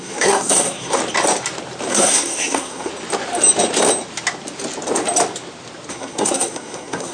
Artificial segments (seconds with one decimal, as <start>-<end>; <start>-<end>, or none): 0.0-1.0; 1.9-2.9; 5.9-7.1